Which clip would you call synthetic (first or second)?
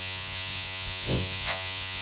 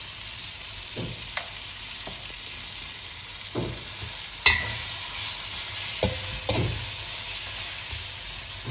first